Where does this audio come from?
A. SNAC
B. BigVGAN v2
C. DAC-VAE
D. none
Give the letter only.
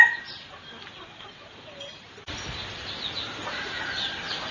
D